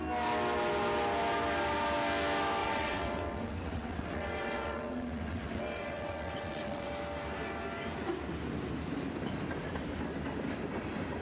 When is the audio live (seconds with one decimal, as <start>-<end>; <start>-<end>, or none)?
0.0-2.6; 6.9-11.2